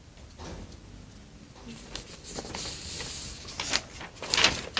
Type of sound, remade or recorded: recorded